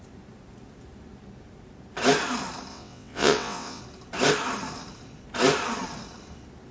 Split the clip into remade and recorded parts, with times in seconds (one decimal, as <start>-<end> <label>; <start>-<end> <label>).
0.0-2.7 recorded; 2.7-3.8 remade; 3.8-6.7 recorded